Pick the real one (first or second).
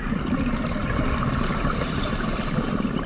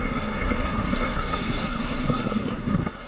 first